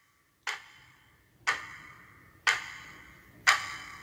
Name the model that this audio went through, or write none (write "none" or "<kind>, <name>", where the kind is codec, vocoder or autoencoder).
none